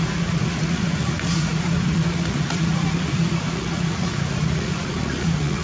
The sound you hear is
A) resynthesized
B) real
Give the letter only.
A